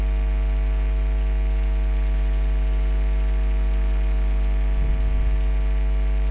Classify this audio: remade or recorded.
recorded